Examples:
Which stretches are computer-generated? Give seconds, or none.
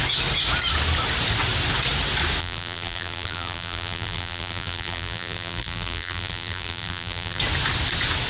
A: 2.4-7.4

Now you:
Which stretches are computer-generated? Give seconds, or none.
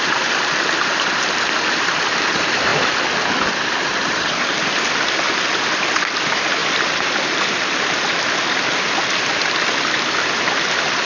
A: 0.0-6.6; 10.3-11.1